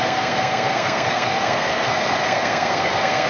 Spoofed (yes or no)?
yes